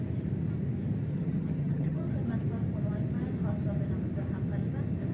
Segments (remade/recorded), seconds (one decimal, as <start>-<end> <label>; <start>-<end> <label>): 0.0-1.1 recorded; 1.1-2.1 remade; 2.1-5.1 recorded